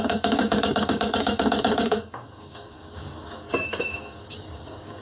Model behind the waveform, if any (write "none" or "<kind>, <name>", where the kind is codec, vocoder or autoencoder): codec, DAC